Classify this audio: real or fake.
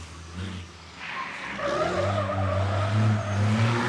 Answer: real